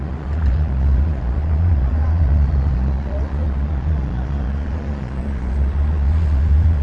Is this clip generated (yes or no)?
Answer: yes